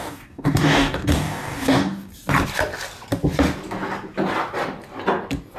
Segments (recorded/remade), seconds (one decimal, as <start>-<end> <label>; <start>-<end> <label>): 0.0-2.1 remade; 2.1-5.6 recorded